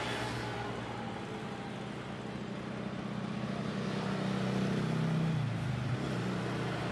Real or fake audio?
real